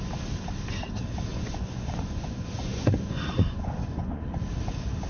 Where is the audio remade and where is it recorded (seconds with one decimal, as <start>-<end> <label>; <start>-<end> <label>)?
0.0-1.3 recorded; 1.3-4.4 remade; 4.4-5.1 recorded